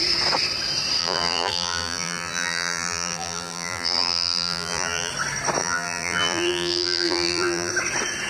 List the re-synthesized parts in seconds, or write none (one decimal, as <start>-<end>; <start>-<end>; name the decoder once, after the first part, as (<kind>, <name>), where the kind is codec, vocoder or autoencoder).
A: 1.0-5.1 (vocoder, BigVGAN v2); 5.6-7.7

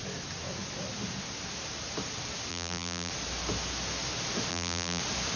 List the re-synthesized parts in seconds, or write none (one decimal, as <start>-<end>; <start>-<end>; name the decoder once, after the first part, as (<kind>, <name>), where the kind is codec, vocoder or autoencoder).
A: 2.5-3.1 (vocoder, BigVGAN v2); 4.5-5.0

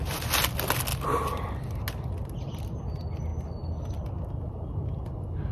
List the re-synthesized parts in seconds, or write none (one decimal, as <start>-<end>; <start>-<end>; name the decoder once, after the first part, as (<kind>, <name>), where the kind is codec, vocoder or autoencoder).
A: none

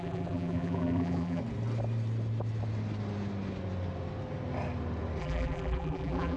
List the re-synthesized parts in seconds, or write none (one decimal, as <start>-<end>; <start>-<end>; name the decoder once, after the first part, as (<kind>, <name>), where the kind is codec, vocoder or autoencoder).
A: 0.0-1.4 (vocoder, BigVGAN v2); 5.2-6.4